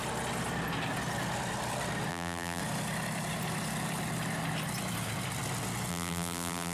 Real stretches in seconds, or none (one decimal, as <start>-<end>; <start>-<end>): 0.0-2.1; 2.6-5.9